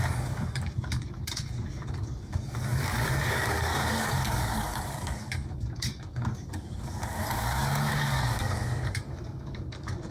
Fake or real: fake